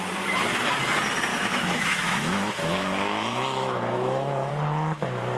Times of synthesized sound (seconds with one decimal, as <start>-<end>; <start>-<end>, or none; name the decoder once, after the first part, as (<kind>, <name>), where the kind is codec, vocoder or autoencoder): 1.3-4.5 (autoencoder, DAC-VAE)